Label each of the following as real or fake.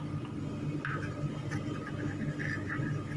real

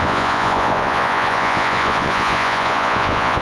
fake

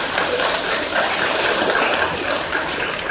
real